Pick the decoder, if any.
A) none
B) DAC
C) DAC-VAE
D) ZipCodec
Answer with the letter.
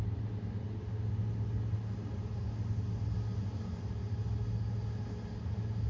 A